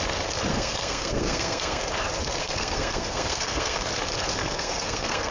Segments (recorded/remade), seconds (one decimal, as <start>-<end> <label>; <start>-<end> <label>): 0.0-0.5 recorded; 0.5-1.8 remade; 1.8-2.4 recorded; 2.4-3.8 remade; 3.8-4.4 recorded; 4.4-5.3 remade